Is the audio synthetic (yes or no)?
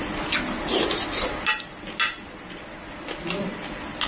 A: no